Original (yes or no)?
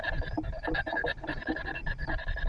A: yes